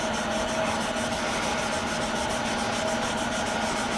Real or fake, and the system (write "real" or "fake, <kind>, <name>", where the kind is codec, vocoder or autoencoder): real